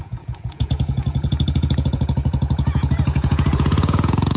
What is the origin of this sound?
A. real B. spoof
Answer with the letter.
B